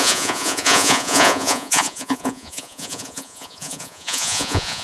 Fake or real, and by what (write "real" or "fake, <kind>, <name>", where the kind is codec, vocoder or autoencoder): fake, vocoder, Vocos